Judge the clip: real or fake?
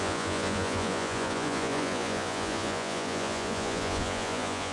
fake